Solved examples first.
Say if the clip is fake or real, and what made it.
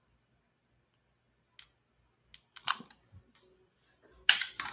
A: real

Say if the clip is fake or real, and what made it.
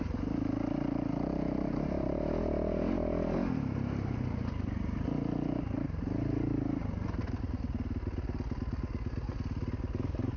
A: real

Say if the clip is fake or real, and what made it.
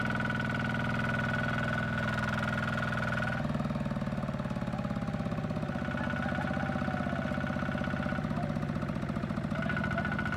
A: real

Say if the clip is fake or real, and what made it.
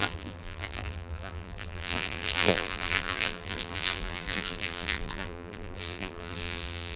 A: fake, vocoder, BigVGAN v2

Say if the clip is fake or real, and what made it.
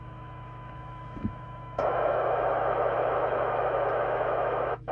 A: fake, autoencoder, DAC-VAE